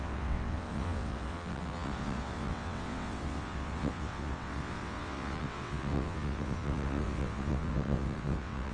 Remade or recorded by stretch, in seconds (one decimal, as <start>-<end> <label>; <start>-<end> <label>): 0.0-8.7 remade